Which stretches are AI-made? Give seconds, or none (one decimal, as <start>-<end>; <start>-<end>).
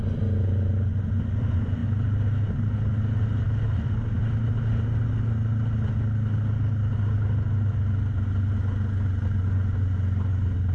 none